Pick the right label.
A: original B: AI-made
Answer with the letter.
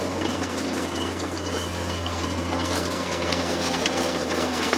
B